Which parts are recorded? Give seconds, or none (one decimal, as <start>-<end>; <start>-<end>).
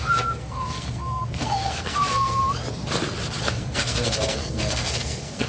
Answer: 2.4-3.4